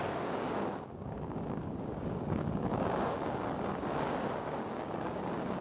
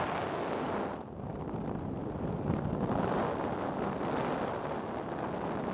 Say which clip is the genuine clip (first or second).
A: second